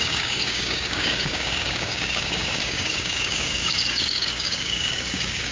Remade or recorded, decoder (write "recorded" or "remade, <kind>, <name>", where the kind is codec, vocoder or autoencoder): remade, codec, DAC